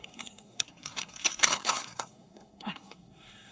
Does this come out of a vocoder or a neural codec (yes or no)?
yes